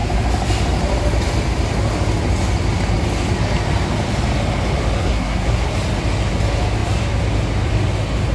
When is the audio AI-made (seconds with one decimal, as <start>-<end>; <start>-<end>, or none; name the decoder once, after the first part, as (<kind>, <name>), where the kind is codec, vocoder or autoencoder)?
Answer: 5.0-5.7 (codec, SNAC)